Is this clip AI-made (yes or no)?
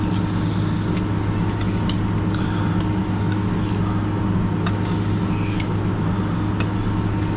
no